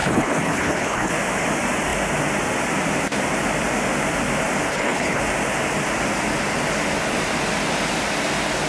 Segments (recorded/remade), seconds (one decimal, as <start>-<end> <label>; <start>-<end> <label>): 0.0-1.1 remade; 1.1-4.7 recorded; 4.7-5.2 remade; 5.2-8.7 recorded